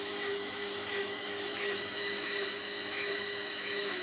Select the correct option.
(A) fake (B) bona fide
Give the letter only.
A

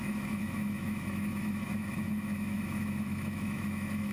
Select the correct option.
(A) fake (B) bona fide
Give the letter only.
A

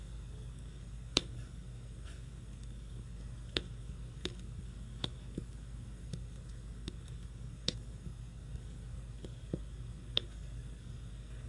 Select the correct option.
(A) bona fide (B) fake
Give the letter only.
B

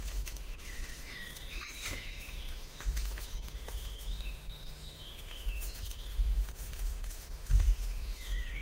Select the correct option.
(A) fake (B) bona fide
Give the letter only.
A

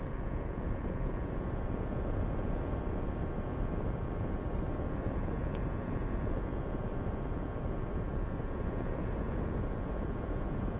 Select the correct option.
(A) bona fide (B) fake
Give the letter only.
B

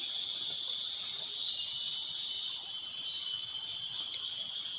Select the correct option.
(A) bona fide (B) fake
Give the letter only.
A